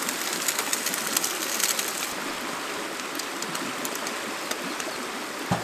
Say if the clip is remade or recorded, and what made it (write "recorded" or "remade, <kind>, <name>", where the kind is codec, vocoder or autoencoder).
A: recorded